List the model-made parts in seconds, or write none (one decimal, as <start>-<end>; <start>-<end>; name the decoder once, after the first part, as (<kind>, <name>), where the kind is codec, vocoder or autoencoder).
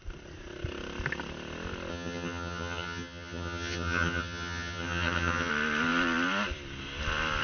1.9-5.5 (vocoder, HiFi-GAN)